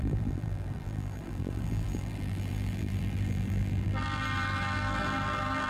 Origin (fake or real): fake